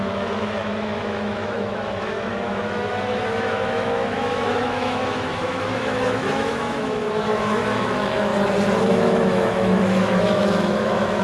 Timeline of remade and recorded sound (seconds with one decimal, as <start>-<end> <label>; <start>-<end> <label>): 0.0-8.3 remade; 8.3-8.8 recorded; 8.8-11.2 remade